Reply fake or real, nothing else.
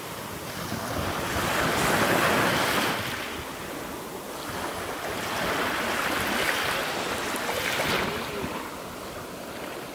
real